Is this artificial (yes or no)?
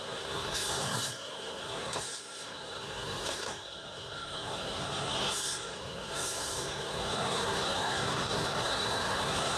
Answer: yes